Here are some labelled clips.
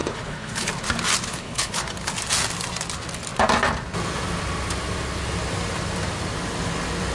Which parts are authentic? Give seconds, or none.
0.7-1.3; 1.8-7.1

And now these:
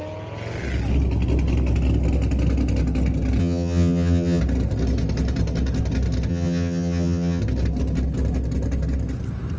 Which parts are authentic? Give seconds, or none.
0.0-3.4; 4.4-6.3; 7.4-9.6

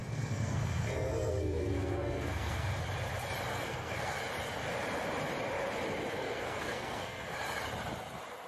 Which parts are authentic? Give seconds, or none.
2.8-3.5; 4.2-6.1; 7.3-8.5

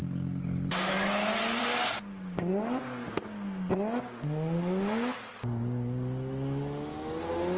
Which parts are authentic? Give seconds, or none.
0.9-1.6; 3.1-7.6